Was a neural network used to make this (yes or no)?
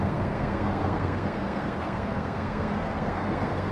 yes